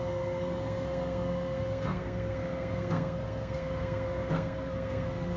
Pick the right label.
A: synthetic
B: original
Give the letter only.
A